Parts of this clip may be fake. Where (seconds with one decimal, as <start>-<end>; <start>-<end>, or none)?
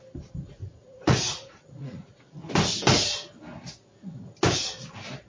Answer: 0.6-2.5